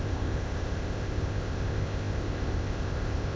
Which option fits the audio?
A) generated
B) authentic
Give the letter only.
A